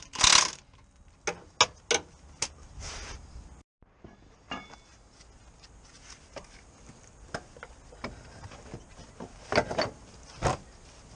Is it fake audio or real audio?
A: real